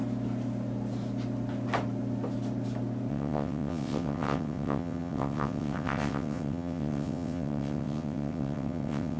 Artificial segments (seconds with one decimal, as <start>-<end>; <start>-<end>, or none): 3.1-9.2